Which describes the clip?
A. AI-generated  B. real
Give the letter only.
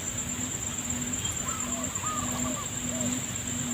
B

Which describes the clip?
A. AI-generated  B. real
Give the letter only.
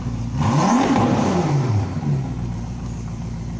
A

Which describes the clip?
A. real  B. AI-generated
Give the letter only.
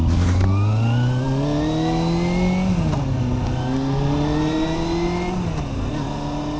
A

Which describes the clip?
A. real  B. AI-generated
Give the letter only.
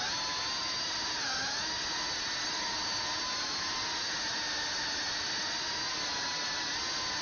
A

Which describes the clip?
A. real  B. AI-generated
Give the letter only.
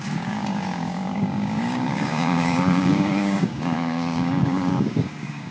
B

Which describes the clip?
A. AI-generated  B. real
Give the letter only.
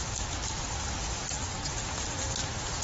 B